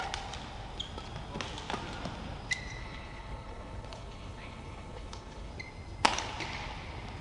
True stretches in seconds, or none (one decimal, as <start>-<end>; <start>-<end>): 0.0-2.8; 5.5-7.2